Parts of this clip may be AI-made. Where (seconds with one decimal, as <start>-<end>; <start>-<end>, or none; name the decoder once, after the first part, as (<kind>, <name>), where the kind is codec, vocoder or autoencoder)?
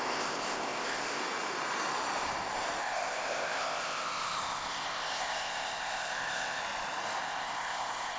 0.0-1.2 (codec, ZipCodec); 2.8-6.6; 7.2-8.2